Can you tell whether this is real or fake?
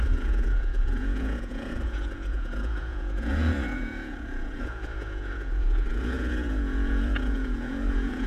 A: fake